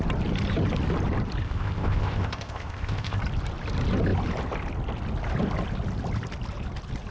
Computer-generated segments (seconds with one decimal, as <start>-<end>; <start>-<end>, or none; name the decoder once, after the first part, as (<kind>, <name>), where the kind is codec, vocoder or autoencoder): 1.4-3.2 (codec, ZipCodec)